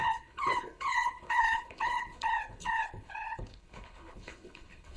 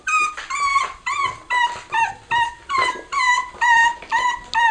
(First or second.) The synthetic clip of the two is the first